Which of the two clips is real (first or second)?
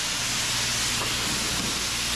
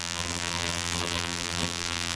first